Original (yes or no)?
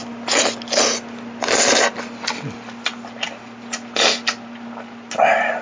yes